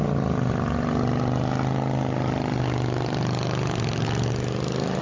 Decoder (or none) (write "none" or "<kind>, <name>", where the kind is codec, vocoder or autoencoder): none